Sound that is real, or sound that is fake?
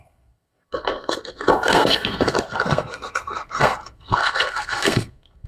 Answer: fake